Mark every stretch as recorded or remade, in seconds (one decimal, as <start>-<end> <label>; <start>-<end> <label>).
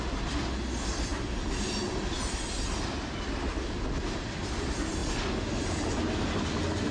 0.0-6.9 recorded